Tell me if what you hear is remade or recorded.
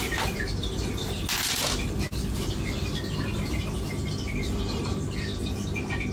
recorded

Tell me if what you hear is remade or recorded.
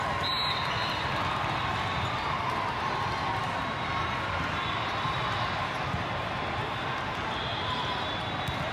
recorded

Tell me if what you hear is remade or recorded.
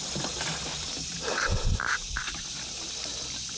remade